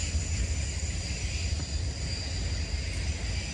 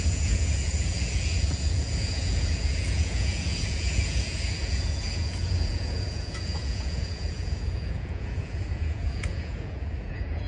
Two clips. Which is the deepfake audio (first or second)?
second